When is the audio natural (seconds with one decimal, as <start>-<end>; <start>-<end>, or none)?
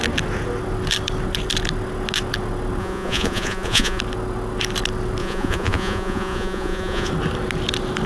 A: 0.0-2.8; 4.0-5.2; 7.1-8.1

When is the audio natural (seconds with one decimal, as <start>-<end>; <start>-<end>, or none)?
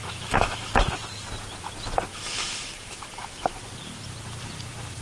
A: 0.7-2.1; 3.5-5.0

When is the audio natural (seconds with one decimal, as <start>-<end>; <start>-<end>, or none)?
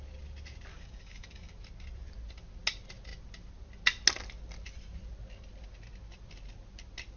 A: 0.0-0.7; 1.5-7.2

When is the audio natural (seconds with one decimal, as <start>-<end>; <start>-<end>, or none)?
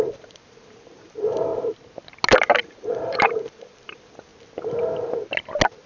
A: 1.5-2.4; 4.3-5.9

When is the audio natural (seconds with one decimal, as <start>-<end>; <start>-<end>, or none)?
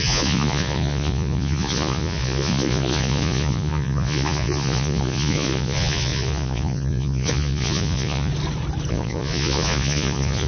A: 8.3-8.9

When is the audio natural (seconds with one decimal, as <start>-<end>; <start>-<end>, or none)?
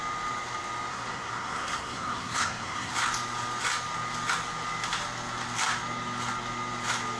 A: 0.0-0.9; 2.9-7.2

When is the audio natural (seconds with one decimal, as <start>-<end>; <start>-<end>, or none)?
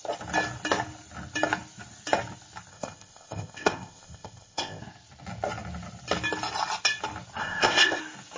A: 0.0-2.7; 4.8-7.4; 8.0-8.4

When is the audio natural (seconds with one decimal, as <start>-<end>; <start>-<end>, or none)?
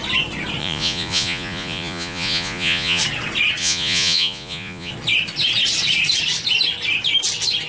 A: 0.0-0.6; 3.0-3.6; 4.9-7.7